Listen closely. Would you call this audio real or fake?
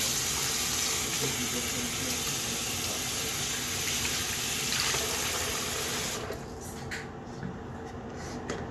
real